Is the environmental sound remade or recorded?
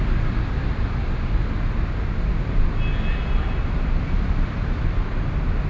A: recorded